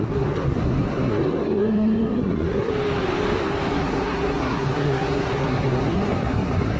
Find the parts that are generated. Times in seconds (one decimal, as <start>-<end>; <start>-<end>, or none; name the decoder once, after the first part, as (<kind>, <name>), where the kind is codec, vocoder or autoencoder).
0.0-2.7 (codec, SNAC); 3.7-6.8